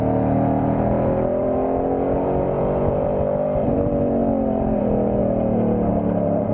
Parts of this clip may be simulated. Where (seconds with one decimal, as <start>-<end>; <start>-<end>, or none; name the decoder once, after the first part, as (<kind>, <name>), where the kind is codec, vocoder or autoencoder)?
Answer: 0.0-1.6 (vocoder, BigVGAN v2); 2.2-5.2; 5.9-6.5